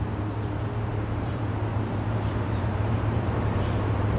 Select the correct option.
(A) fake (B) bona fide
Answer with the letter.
A